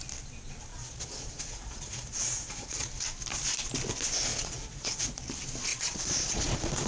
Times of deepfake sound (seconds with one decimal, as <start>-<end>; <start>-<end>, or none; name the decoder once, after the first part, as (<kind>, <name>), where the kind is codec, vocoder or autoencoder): 0.7-2.9 (vocoder, Vocos); 4.3-5.2; 5.7-6.9